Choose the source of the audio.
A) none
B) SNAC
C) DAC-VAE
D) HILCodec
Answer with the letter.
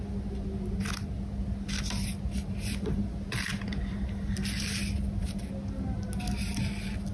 A